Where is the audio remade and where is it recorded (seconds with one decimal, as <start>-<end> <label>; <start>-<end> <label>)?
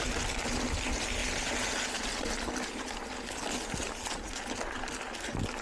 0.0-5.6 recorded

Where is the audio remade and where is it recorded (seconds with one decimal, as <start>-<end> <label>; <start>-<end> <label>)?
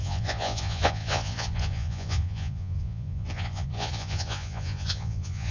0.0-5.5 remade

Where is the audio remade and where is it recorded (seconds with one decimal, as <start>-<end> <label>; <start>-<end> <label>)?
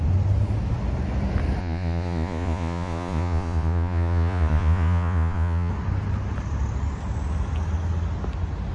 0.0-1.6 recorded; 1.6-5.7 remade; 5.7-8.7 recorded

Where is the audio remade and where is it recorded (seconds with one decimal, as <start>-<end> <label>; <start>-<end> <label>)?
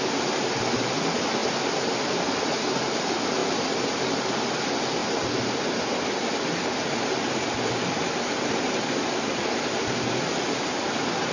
0.0-11.3 recorded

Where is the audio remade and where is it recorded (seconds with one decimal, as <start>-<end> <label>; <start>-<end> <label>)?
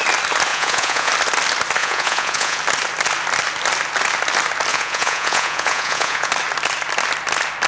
0.0-0.5 recorded; 0.5-1.1 remade; 1.1-1.8 recorded; 1.8-2.6 remade; 2.6-4.7 recorded; 4.7-6.3 remade; 6.3-7.7 recorded